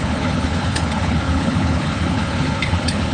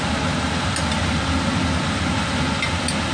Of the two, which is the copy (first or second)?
first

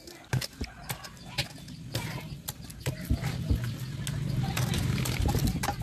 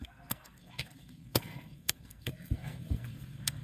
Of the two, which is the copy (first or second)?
second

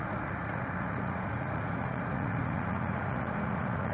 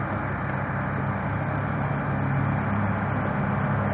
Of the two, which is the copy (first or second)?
first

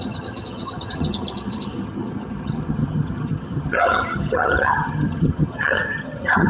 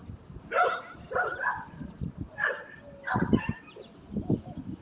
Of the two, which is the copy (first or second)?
first